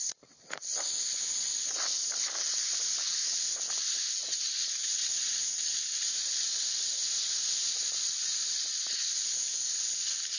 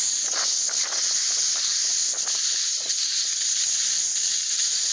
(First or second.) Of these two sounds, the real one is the second